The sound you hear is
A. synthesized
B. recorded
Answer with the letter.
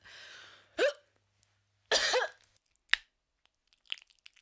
B